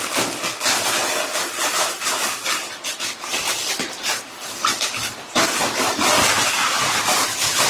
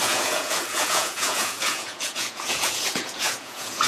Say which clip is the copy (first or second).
second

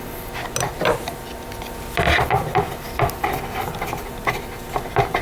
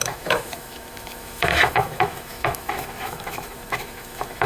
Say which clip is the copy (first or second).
second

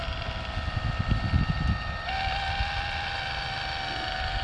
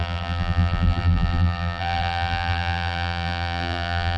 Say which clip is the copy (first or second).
second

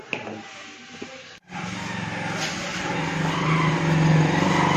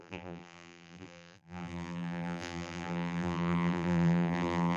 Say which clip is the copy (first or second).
second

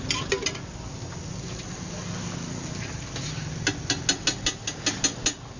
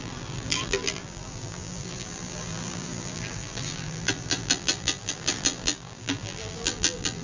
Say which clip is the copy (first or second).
second